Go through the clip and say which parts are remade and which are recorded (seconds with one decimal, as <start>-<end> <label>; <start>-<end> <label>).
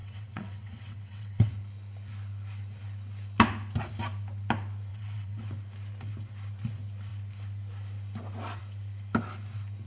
0.0-1.5 remade; 1.5-4.9 recorded; 4.9-5.4 remade; 5.4-9.9 recorded